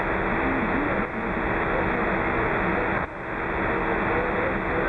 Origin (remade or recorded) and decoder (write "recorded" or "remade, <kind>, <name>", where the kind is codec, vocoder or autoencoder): recorded